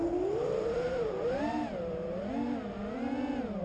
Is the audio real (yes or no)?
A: yes